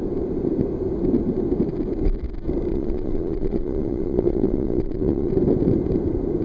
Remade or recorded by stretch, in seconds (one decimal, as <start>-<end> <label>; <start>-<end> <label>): 0.0-2.7 recorded; 2.7-5.3 remade; 5.3-6.4 recorded